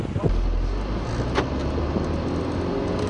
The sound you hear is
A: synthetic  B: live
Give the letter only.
B